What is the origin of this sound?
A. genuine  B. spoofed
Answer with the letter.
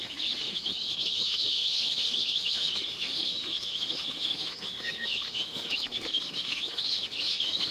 B